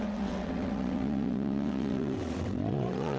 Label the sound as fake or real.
fake